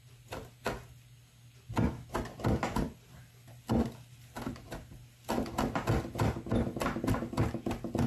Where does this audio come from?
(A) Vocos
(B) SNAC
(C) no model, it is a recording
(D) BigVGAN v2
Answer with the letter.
C